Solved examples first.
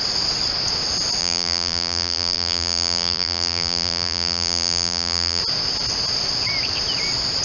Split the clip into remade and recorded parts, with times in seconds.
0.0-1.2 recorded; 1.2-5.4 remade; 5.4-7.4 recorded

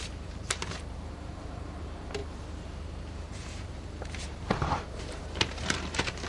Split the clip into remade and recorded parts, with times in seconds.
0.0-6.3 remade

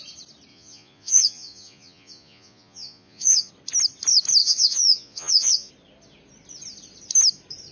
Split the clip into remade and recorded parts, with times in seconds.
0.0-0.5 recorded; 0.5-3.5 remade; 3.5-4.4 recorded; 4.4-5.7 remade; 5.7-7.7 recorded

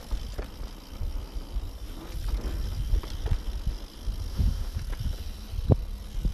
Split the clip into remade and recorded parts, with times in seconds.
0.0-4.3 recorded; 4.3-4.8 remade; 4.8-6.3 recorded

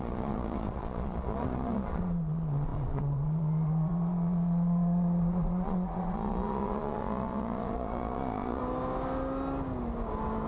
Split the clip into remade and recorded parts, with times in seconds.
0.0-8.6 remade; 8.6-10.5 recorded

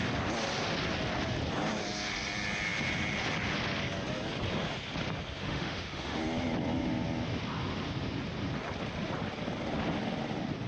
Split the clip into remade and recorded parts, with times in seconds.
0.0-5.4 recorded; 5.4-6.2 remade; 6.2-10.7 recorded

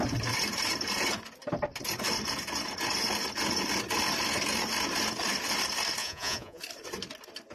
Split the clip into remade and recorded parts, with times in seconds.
0.0-6.0 recorded; 6.0-6.6 remade; 6.6-7.5 recorded